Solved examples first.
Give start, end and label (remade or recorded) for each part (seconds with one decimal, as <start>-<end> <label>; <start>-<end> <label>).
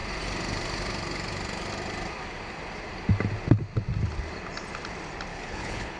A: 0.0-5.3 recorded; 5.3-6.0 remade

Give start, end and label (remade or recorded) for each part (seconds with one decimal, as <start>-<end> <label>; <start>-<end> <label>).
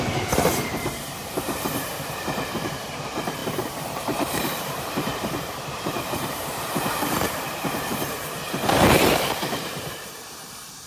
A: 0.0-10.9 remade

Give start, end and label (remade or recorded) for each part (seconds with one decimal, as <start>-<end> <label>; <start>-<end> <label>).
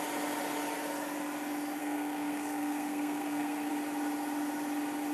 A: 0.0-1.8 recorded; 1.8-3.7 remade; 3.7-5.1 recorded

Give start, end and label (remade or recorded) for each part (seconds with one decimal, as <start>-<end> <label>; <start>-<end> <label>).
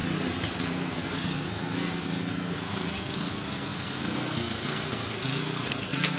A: 0.0-0.6 recorded; 0.6-6.2 remade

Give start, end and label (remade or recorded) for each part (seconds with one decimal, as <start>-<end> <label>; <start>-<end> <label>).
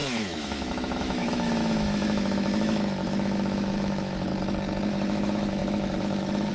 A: 0.0-4.3 remade; 4.3-4.9 recorded; 4.9-6.5 remade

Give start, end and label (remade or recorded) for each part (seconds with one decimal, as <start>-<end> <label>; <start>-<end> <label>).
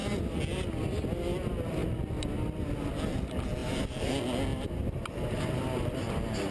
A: 0.0-3.6 recorded; 3.6-4.1 remade; 4.1-4.5 recorded; 4.5-5.4 remade; 5.4-6.5 recorded